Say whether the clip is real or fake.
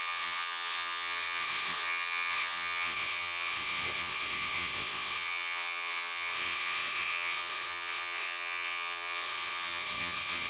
fake